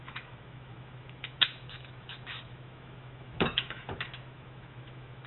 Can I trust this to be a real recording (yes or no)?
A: no